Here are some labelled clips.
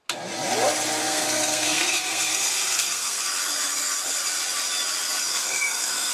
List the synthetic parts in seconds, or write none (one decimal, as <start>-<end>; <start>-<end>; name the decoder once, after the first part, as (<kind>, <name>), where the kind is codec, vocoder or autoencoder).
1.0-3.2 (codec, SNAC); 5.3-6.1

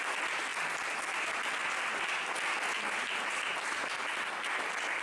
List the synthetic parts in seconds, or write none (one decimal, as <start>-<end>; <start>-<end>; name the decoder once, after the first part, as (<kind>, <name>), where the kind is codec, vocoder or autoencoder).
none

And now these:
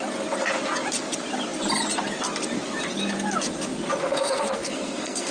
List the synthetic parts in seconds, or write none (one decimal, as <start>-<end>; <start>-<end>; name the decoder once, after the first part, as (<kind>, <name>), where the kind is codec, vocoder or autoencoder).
4.0-5.3 (codec, SNAC)

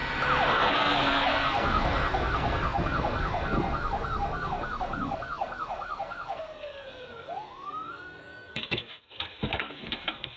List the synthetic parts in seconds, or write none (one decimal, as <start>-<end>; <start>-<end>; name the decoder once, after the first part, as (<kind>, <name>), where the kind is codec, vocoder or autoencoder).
0.5-10.4 (codec, SNAC)